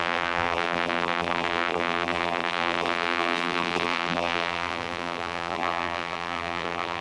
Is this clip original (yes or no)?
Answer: no